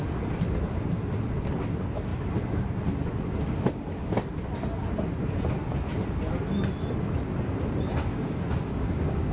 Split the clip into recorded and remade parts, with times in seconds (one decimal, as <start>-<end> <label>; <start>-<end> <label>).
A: 0.0-8.1 recorded; 8.1-9.3 remade